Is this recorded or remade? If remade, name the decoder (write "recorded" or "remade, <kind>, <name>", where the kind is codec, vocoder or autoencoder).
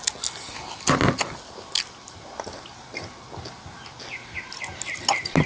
recorded